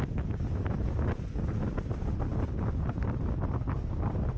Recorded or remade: recorded